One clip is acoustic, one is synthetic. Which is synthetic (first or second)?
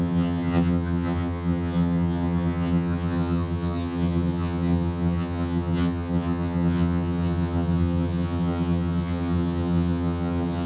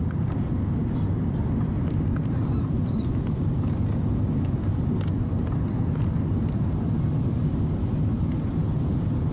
first